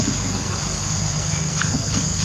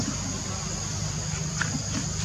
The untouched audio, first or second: second